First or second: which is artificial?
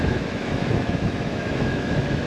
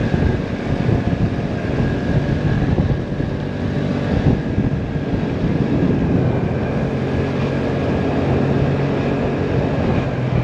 first